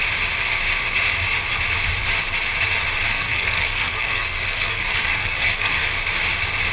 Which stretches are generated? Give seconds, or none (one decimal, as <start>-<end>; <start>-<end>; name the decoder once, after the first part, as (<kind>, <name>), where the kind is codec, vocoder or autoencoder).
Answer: 3.1-5.9 (codec, SNAC)